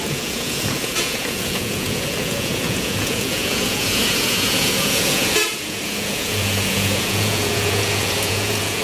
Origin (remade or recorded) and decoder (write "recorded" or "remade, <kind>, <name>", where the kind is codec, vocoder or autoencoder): remade, vocoder, Vocos